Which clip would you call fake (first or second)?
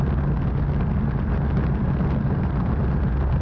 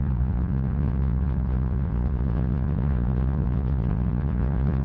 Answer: second